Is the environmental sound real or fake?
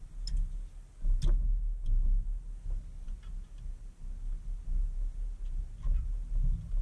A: real